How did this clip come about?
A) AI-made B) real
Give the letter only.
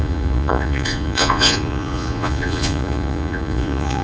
A